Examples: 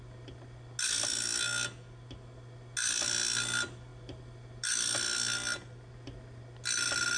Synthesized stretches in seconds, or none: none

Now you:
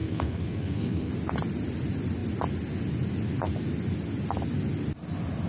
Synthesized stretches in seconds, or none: 0.0-1.1 (codec, SNAC)

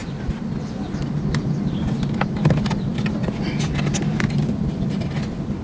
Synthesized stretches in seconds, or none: none